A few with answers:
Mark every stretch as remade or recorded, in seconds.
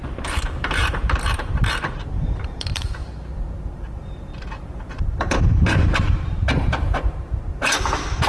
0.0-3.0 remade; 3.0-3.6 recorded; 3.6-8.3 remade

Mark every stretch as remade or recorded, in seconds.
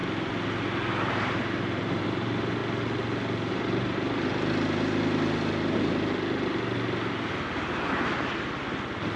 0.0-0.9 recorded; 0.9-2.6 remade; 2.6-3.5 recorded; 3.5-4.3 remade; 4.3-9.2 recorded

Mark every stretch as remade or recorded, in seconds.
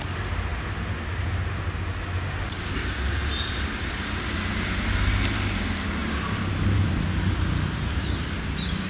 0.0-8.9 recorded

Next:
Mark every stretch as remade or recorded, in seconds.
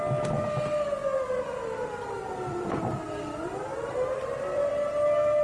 0.0-1.0 recorded; 1.0-2.8 remade; 2.8-3.7 recorded; 3.7-4.7 remade; 4.7-5.4 recorded